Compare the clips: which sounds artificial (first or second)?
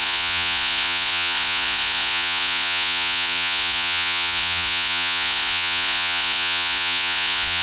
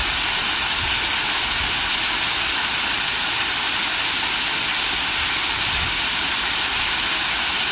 first